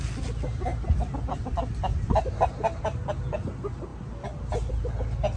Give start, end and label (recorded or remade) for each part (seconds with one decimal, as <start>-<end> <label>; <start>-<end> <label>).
0.0-5.4 recorded